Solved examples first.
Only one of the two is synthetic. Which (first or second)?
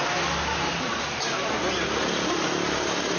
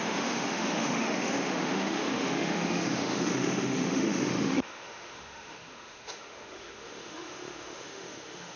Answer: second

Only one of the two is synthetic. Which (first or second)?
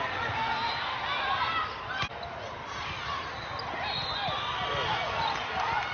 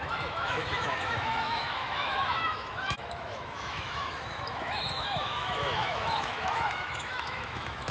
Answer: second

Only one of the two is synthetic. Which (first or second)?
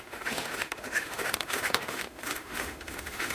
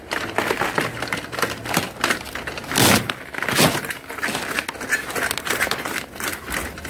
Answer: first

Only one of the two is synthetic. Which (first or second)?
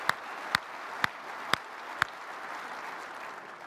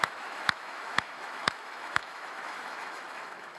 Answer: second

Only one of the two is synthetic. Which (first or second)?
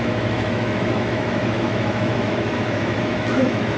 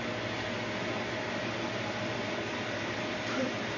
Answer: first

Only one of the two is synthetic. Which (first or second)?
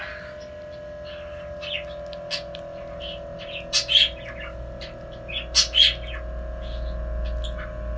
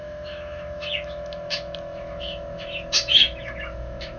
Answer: second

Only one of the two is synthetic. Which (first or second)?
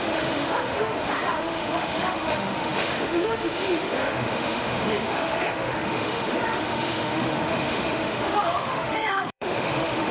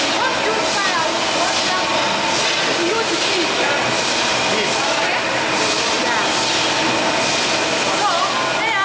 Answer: first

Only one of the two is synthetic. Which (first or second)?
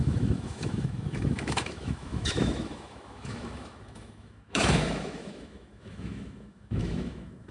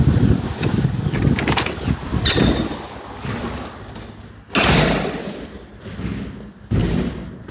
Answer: first